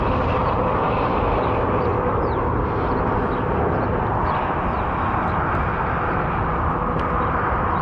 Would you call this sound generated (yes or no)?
no